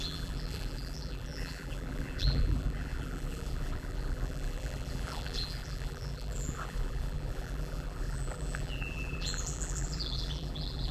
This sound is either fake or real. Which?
fake